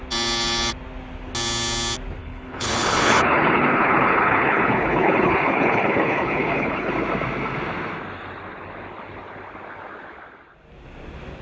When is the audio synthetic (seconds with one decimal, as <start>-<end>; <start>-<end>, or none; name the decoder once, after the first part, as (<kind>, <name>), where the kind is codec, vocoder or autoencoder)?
2.2-6.9 (codec, HILCodec)